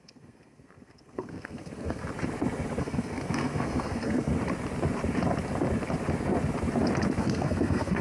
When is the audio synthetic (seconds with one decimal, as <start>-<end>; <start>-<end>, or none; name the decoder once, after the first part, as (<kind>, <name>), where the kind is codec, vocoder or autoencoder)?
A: 0.0-2.0 (codec, SNAC); 2.8-4.3; 7.2-8.0